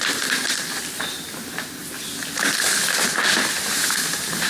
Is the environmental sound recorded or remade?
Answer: recorded